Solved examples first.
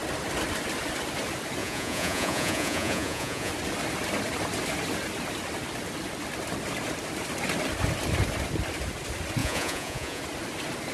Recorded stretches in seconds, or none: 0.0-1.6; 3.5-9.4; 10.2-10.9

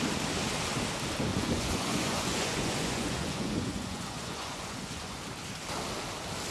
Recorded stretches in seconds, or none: 0.0-1.3; 5.2-6.5

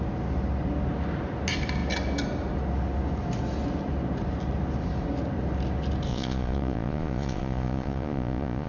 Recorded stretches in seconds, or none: 0.0-6.1

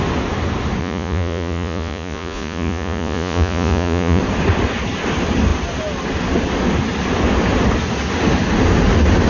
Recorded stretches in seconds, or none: 0.0-0.8; 4.2-9.3

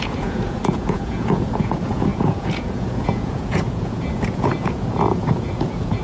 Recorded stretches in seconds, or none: none

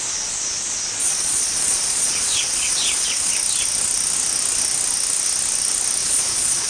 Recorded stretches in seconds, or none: 0.0-1.0; 3.3-6.0